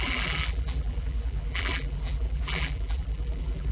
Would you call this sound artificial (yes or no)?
yes